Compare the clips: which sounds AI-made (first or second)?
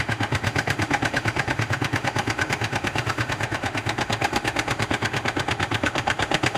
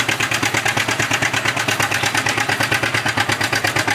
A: first